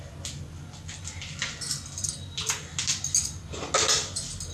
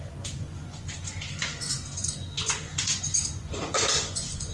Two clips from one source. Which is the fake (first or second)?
second